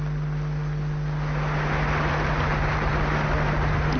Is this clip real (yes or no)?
yes